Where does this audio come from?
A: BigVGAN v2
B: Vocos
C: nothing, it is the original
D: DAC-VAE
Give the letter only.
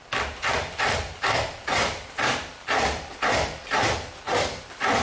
A